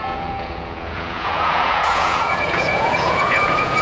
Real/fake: fake